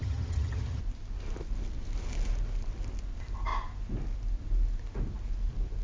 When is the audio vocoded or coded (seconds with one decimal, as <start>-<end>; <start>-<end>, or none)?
0.0-0.8